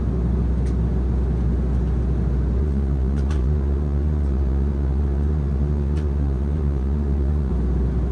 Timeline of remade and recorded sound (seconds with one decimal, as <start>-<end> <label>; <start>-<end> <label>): 0.0-2.6 recorded; 2.6-7.5 remade; 7.5-8.1 recorded